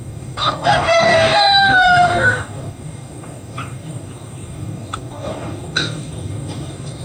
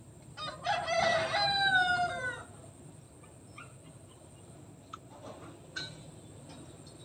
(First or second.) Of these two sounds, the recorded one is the second